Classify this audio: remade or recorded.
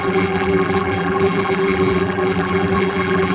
remade